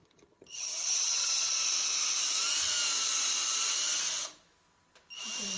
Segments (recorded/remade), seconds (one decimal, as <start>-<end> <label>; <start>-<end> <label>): 0.0-1.5 remade; 1.5-5.6 recorded